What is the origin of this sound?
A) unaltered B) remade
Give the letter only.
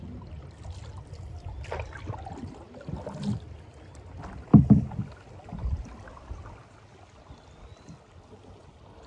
A